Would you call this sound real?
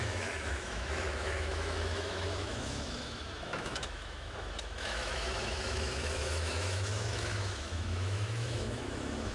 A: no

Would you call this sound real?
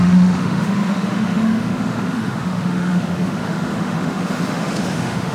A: no